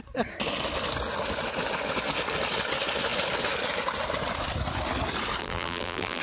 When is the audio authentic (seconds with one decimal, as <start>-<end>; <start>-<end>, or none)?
0.0-5.4